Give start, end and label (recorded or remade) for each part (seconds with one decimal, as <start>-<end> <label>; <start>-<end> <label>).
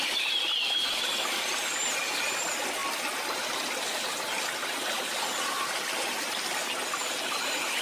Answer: 0.0-7.8 recorded